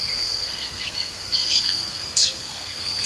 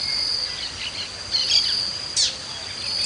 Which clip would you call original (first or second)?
second